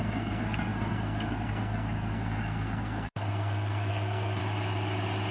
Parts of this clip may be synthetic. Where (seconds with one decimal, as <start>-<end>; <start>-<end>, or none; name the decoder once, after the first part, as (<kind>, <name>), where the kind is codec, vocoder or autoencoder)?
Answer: 0.0-4.4 (codec, SNAC)